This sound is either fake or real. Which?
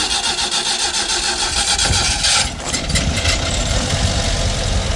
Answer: real